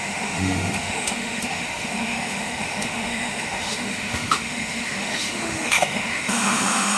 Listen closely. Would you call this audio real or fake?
fake